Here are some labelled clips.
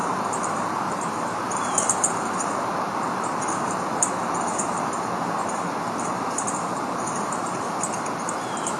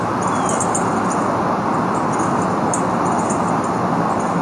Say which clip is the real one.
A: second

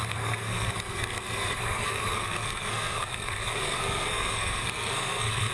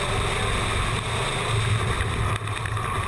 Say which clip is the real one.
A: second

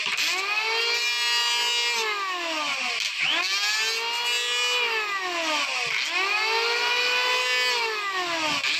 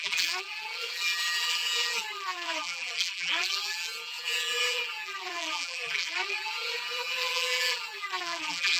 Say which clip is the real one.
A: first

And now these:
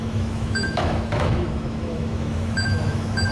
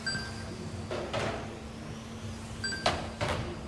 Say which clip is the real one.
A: second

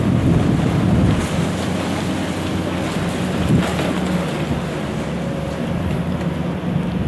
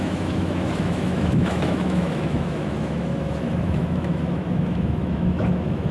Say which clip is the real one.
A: first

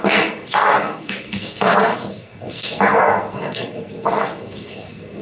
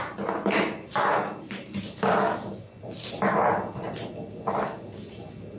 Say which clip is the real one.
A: second